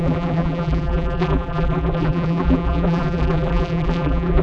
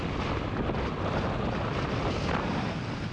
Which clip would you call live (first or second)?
second